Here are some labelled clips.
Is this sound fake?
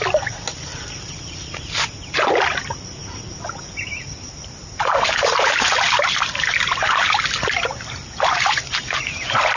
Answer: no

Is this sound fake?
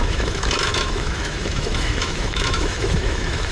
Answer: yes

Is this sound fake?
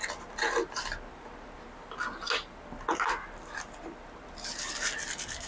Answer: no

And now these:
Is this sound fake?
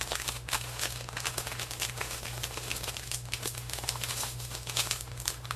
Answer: yes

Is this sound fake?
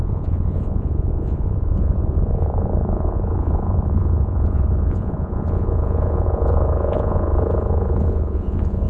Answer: yes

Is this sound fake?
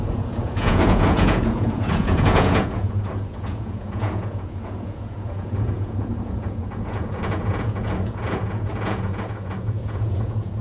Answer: yes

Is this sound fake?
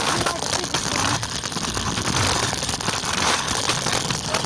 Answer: no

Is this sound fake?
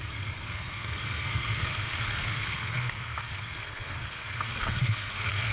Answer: yes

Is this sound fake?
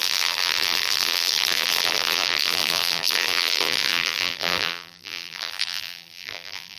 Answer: yes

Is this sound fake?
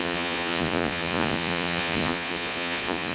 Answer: yes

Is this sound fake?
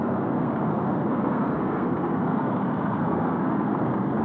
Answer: yes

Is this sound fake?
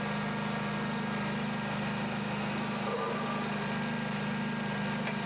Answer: no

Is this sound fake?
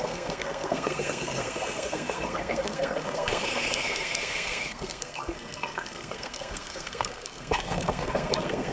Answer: yes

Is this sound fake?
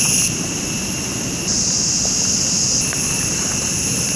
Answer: no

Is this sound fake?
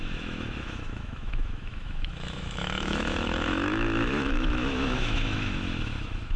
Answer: yes